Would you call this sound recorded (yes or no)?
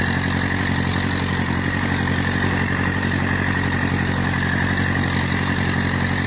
yes